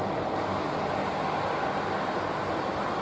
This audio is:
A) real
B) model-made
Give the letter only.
A